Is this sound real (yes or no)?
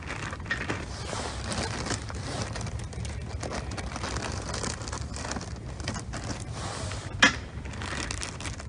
yes